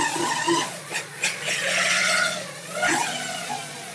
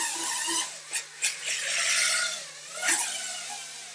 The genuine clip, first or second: second